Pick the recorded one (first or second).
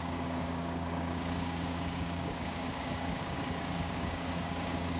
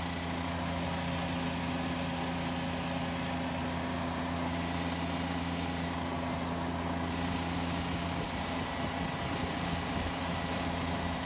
second